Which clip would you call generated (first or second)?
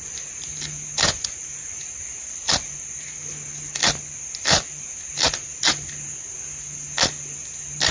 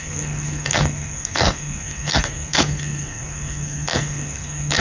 second